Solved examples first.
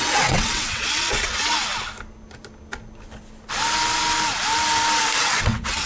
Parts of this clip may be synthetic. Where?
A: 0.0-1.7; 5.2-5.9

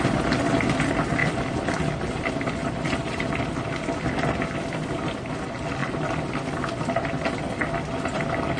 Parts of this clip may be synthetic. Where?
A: 1.2-3.3; 5.8-8.6

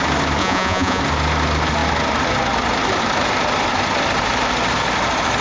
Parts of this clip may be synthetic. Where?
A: 0.4-1.0

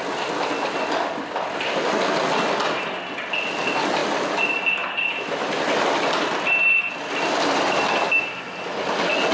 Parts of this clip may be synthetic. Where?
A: none

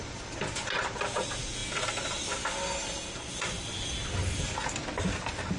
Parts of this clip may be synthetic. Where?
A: none

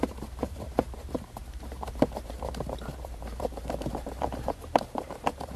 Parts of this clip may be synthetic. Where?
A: 0.0-5.6